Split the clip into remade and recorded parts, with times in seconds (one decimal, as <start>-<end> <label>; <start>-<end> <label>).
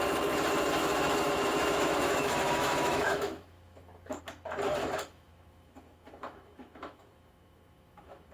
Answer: 0.0-0.8 recorded; 0.8-4.2 remade; 4.2-4.8 recorded; 4.8-8.3 remade